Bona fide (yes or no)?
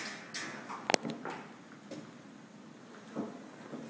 yes